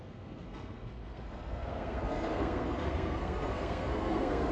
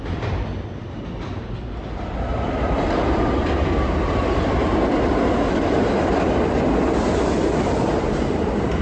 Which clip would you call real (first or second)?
second